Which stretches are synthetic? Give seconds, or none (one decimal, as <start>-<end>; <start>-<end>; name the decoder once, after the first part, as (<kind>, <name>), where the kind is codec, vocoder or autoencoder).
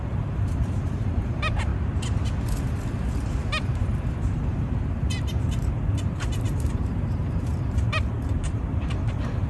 0.0-1.7 (vocoder, BigVGAN v2); 3.6-9.5